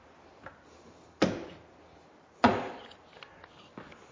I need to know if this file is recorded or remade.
recorded